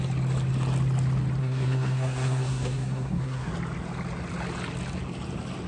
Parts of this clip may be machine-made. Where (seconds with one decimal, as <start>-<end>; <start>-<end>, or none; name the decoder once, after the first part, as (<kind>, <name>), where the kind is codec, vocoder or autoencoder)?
1.4-3.5 (codec, SNAC)